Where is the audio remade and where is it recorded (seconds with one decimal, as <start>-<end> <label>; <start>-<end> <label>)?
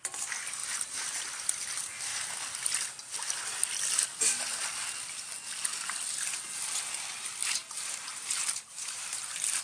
0.0-0.6 recorded; 0.6-1.2 remade; 1.2-7.4 recorded; 7.4-9.6 remade